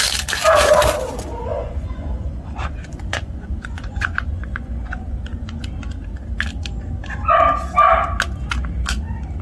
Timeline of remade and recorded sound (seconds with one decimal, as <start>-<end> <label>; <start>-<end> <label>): 0.0-1.5 recorded; 1.5-5.7 remade; 5.7-9.4 recorded